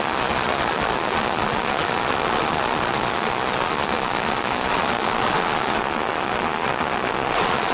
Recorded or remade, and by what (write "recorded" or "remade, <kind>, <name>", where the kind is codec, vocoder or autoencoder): remade, vocoder, Vocos